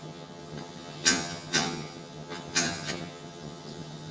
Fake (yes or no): yes